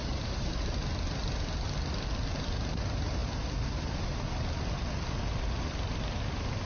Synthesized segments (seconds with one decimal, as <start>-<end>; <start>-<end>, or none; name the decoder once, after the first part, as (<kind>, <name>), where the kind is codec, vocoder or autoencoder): 0.0-0.5 (vocoder, BigVGAN v2)